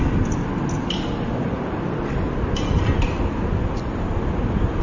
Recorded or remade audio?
recorded